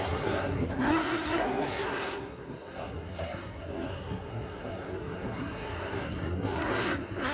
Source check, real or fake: fake